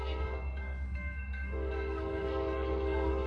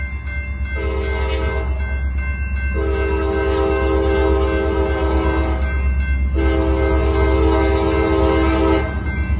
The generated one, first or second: first